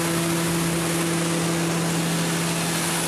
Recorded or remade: recorded